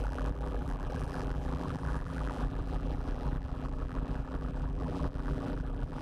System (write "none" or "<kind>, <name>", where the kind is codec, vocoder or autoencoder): vocoder, BigVGAN v2